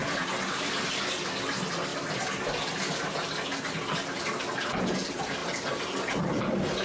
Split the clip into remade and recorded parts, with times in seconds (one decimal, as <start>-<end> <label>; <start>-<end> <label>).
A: 0.0-0.9 remade; 0.9-6.8 recorded